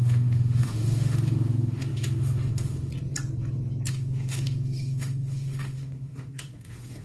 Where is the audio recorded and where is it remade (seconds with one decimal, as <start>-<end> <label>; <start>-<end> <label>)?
0.0-2.9 remade; 2.9-3.9 recorded; 3.9-7.0 remade